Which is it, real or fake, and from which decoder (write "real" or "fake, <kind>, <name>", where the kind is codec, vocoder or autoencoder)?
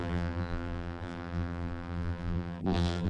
fake, vocoder, BigVGAN v2